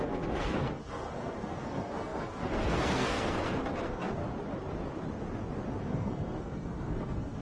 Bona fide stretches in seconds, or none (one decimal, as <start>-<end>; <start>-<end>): 4.2-5.8